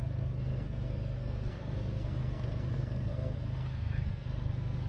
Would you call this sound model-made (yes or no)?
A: yes